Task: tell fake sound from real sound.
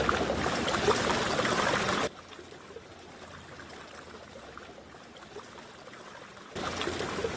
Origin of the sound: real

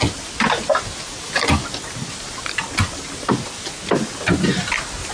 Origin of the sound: real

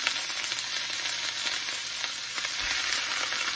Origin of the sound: real